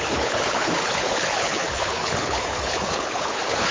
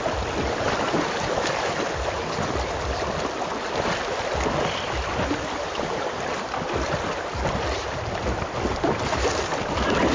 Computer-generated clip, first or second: first